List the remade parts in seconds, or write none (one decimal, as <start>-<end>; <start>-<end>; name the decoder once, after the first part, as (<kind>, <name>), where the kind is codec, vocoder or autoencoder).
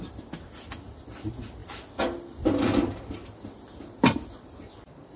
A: none